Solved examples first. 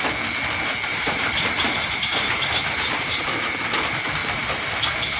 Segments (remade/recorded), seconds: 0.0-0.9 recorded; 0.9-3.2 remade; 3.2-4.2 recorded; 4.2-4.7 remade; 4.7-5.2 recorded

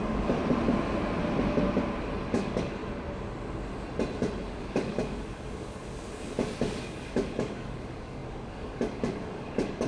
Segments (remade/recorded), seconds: 0.0-0.4 remade; 0.4-2.3 recorded; 2.3-2.8 remade; 2.8-4.5 recorded; 4.5-9.9 remade

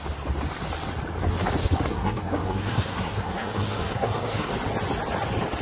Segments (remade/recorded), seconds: 0.0-1.6 recorded; 1.6-4.5 remade; 4.5-5.6 recorded